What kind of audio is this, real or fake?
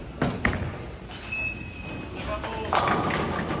real